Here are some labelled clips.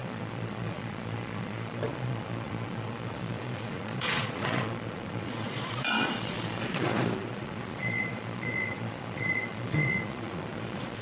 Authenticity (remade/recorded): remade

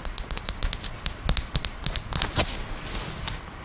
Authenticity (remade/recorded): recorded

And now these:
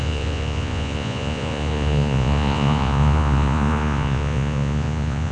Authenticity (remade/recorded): remade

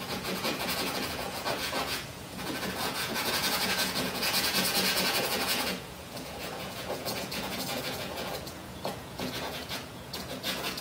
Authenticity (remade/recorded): remade